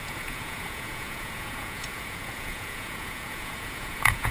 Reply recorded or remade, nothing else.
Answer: remade